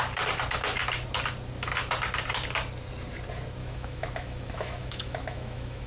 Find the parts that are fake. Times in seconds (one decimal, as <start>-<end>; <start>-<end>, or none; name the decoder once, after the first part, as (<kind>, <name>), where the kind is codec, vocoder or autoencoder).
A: 3.6-5.9 (autoencoder, DAC-VAE)